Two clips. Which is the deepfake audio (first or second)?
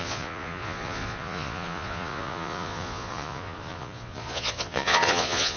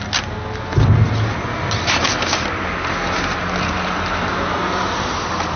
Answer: first